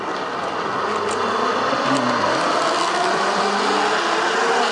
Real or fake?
real